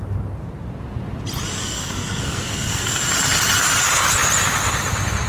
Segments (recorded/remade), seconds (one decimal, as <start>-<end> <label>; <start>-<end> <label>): 0.0-1.6 recorded; 1.6-3.0 remade; 3.0-5.3 recorded